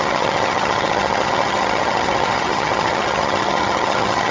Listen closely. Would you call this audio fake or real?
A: fake